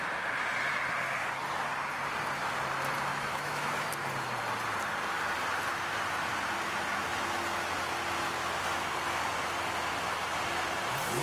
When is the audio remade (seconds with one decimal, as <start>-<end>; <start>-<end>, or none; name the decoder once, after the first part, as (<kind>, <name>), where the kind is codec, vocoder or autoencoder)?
3.1-3.9 (autoencoder, DAC-VAE)